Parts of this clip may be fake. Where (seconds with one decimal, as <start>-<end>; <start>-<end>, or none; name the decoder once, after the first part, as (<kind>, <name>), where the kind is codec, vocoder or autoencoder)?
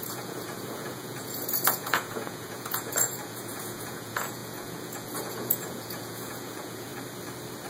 0.0-6.9 (vocoder, Vocos)